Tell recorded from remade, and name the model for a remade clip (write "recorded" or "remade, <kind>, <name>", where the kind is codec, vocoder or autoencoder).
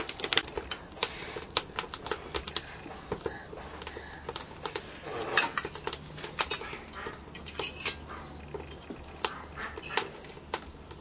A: recorded